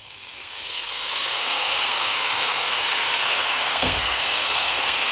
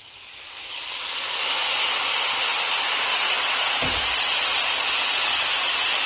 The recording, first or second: second